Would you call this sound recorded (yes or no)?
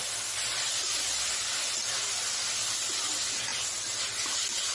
yes